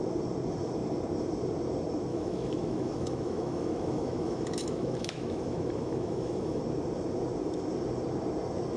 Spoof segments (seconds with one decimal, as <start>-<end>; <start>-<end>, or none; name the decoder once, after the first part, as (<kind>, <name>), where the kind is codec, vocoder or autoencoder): 2.1-6.6 (autoencoder, DAC-VAE)